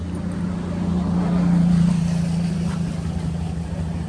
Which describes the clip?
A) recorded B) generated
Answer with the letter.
A